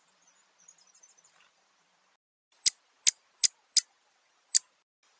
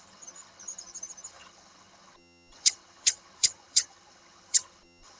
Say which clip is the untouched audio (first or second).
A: first